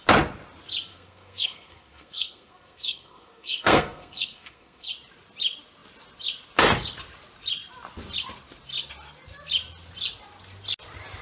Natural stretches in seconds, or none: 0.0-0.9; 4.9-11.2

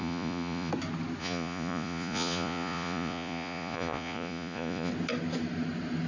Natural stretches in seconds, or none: 0.7-1.2; 4.9-6.1

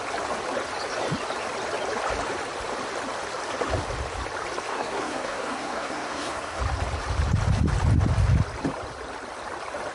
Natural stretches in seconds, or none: 0.0-4.7; 6.6-9.9

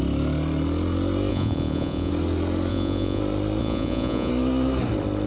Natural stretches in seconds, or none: 0.0-1.3; 2.1-2.7; 3.2-3.6; 4.3-5.3

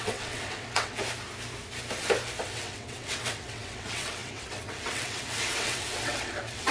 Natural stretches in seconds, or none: 1.0-2.4

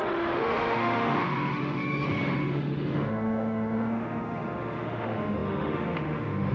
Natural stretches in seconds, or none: none

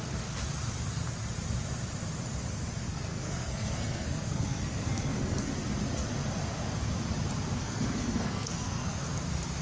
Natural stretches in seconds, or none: 0.0-2.9; 5.5-7.6; 9.0-9.6